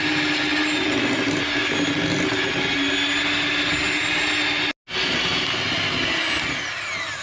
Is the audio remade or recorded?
recorded